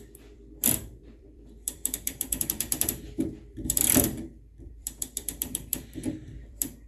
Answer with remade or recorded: remade